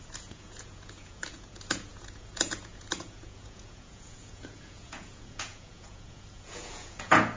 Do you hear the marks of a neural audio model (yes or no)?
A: yes